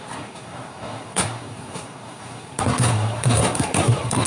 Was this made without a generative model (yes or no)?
no